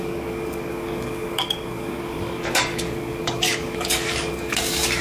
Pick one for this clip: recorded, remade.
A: remade